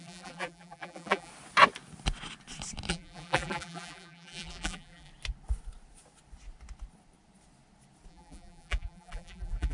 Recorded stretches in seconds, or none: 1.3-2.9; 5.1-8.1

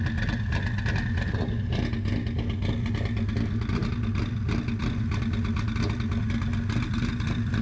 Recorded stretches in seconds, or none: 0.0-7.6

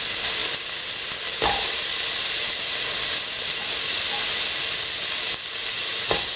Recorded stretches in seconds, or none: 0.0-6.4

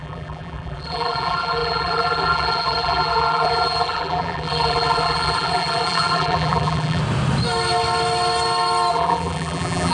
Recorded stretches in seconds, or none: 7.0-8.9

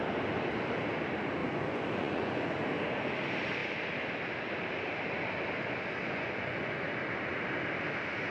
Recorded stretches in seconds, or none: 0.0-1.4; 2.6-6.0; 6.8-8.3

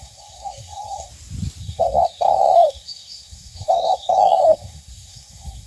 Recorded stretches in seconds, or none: 1.1-1.6

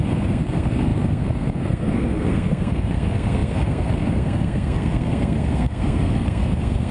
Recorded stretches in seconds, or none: none